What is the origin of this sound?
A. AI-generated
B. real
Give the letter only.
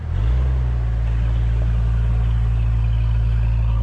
B